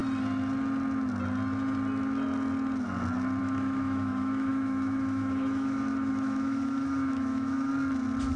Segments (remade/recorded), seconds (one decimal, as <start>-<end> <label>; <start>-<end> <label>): 0.0-3.4 recorded; 3.4-7.7 remade; 7.7-8.4 recorded